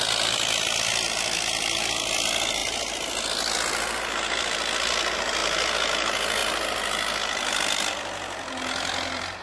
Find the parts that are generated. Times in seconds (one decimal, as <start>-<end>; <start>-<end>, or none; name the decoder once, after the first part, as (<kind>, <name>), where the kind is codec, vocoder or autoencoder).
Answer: none